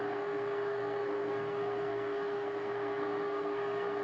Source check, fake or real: fake